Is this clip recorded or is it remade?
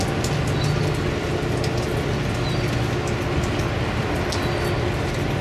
recorded